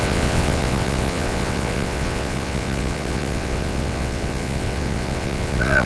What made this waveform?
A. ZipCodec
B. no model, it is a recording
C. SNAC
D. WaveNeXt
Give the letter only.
D